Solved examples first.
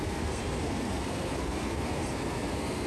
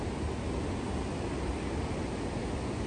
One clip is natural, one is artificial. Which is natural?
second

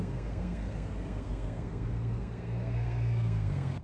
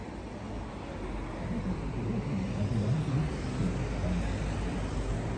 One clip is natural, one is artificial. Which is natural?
second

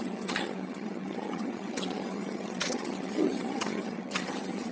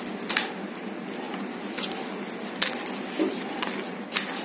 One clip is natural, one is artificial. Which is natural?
second